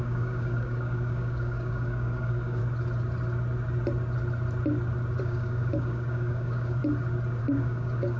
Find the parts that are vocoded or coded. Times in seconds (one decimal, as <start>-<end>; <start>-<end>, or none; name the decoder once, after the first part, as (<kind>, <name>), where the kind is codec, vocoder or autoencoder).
0.0-2.6 (codec, DAC); 5.2-6.8; 7.4-8.2